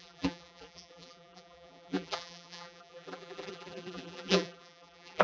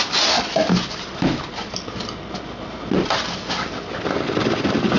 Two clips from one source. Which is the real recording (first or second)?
second